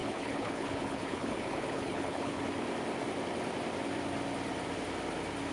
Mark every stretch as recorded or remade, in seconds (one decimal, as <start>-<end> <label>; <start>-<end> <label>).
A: 0.0-2.4 remade; 2.4-5.5 recorded